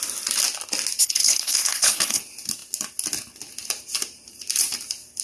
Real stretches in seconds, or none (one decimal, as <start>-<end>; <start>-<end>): 0.0-1.0; 2.2-5.2